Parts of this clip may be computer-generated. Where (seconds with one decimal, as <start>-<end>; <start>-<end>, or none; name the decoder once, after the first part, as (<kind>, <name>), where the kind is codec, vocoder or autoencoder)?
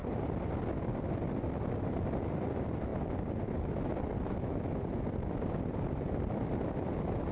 none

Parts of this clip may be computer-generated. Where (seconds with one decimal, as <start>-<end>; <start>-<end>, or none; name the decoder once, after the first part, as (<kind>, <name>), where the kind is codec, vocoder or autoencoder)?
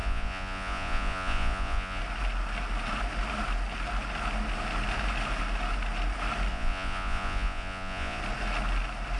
0.0-2.0 (vocoder, Vocos); 6.5-8.2